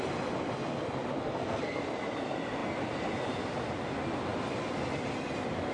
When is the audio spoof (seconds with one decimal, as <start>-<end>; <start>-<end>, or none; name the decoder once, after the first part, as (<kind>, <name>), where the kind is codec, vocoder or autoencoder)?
1.2-1.8 (codec, SNAC)